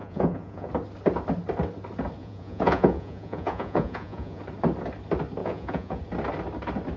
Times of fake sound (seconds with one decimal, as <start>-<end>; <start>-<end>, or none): 0.0-0.7; 2.2-4.4; 5.4-6.0